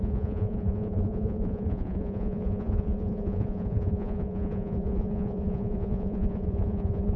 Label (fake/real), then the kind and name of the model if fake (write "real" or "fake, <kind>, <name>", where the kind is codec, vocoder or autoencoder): fake, vocoder, Vocos